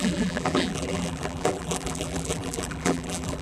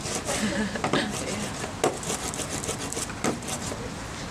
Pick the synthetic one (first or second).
first